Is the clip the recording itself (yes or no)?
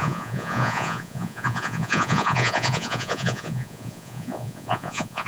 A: no